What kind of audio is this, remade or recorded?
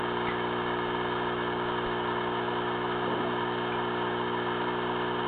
recorded